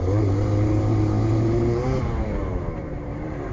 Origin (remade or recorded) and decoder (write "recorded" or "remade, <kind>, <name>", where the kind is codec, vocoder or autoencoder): remade, vocoder, BigVGAN v2